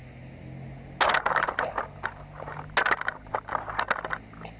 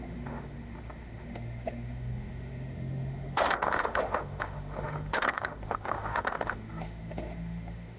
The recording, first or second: first